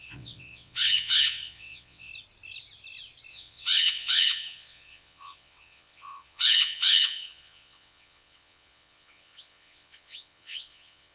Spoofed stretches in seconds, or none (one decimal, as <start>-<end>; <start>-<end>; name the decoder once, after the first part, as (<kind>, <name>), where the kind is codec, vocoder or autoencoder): 0.0-2.1 (vocoder, WaveNeXt); 3.3-11.1